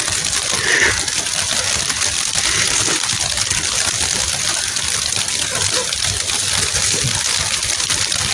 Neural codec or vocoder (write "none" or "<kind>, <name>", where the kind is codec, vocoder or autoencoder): none